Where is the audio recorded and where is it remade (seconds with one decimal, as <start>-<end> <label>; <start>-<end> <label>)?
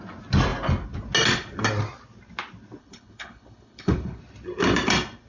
0.0-2.8 recorded; 2.8-4.2 remade; 4.2-5.3 recorded